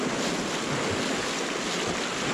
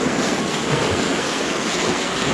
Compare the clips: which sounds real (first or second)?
first